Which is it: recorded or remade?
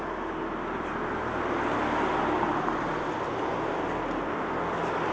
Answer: recorded